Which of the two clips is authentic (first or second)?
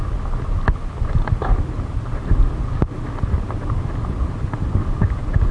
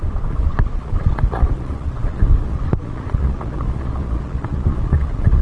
first